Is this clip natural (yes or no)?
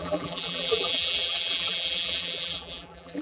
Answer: no